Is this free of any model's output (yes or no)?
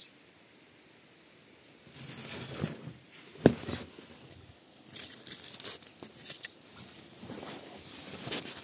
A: yes